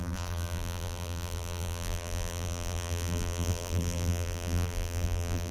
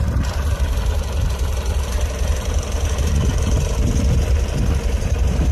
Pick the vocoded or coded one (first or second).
first